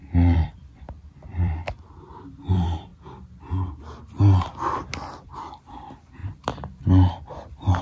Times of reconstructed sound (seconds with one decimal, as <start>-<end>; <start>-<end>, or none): 0.0-2.9; 5.6-6.2